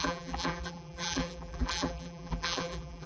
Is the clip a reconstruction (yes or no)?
yes